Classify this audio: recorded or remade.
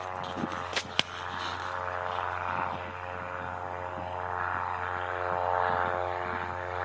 recorded